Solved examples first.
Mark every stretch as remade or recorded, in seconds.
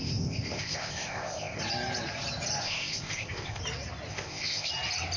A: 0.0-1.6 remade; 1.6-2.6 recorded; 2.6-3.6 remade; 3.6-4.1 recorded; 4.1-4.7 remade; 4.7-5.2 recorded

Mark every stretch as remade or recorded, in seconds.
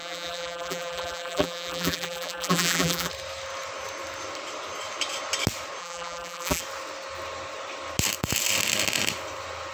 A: 0.0-3.1 remade; 3.1-5.8 recorded; 5.8-6.6 remade; 6.6-9.7 recorded